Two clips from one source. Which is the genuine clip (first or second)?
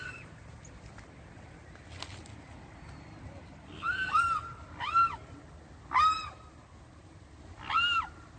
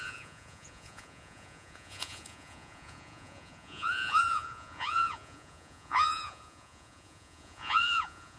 first